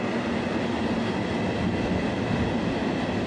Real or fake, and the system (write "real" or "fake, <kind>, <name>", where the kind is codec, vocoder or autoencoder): real